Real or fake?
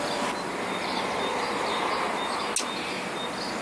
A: real